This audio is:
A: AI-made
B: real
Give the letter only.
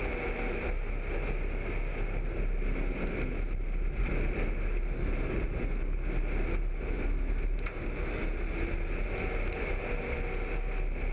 B